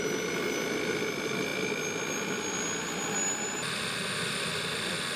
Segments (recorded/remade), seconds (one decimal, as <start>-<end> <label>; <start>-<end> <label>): 0.0-5.2 recorded